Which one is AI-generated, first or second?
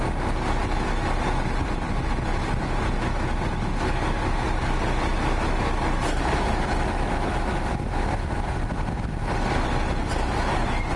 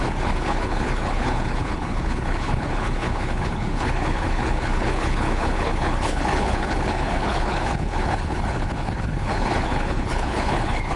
second